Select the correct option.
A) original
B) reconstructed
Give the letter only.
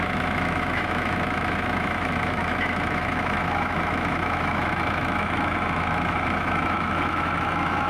B